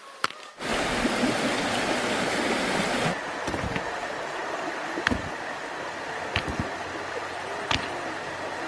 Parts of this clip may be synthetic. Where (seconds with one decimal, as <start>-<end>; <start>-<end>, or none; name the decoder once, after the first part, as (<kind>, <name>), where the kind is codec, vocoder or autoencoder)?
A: 0.7-2.6 (vocoder, BigVGAN v2)